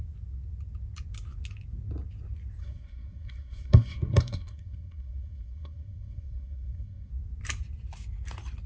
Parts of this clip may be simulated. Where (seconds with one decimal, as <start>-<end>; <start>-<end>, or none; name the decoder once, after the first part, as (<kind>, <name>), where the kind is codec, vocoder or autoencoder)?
2.6-7.1 (codec, SNAC)